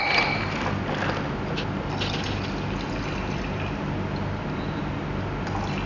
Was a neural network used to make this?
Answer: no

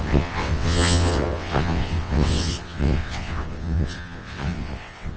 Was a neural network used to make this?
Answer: yes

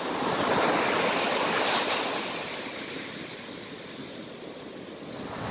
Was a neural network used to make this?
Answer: no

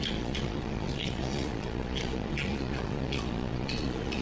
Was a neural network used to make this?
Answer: yes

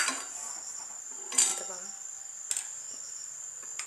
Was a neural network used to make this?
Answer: no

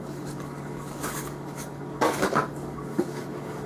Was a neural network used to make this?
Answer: yes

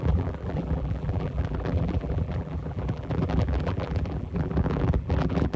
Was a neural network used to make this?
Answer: yes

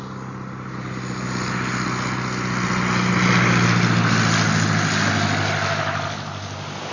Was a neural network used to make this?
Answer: no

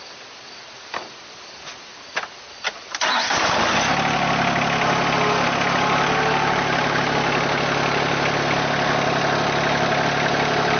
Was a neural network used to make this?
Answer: no